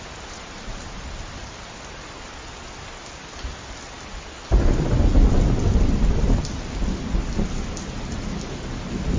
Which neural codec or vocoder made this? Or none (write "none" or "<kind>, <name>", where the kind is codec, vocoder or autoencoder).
none